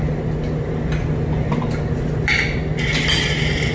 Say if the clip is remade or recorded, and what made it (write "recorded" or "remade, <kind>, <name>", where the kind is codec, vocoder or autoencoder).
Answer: recorded